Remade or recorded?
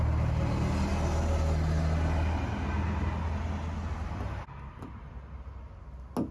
recorded